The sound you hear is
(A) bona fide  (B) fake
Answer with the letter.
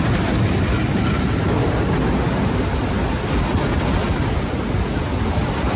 A